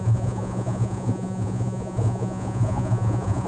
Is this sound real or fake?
fake